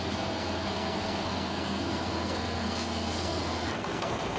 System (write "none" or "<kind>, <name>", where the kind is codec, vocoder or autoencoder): codec, SNAC